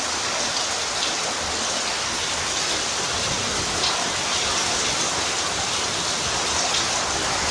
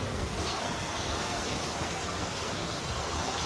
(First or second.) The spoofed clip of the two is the second